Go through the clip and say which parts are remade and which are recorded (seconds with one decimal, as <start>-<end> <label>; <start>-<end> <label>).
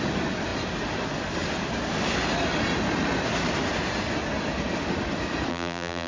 0.0-5.5 recorded; 5.5-6.1 remade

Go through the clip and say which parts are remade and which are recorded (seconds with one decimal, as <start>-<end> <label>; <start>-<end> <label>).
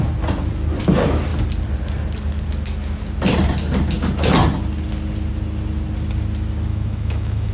0.0-6.7 recorded; 6.7-7.5 remade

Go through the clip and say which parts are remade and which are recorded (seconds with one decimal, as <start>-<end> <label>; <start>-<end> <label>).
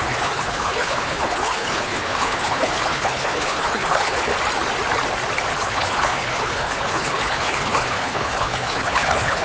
0.0-4.3 remade; 4.3-5.6 recorded; 5.6-9.4 remade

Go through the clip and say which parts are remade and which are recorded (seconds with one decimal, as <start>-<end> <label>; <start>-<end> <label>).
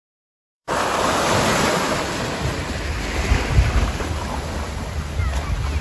0.0-3.5 remade; 3.5-4.2 recorded; 4.2-5.2 remade; 5.2-5.8 recorded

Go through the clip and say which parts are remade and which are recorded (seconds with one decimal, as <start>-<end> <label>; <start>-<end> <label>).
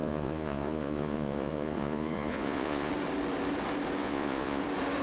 0.0-2.9 remade; 2.9-4.0 recorded; 4.0-4.6 remade; 4.6-5.0 recorded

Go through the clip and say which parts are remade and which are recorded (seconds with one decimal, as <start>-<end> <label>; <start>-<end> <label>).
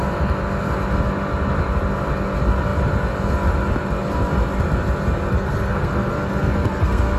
0.0-5.3 recorded; 5.3-7.2 remade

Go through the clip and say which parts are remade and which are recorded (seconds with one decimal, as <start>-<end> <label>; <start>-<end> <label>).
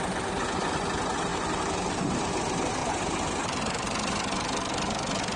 0.0-1.3 recorded; 1.3-2.2 remade; 2.2-5.4 recorded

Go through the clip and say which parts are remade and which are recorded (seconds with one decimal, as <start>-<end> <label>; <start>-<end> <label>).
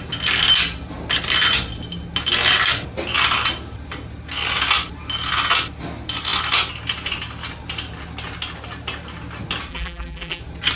0.0-9.7 recorded; 9.7-10.4 remade; 10.4-10.8 recorded